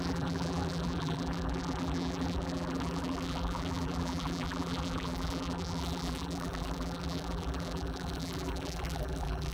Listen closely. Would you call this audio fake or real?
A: fake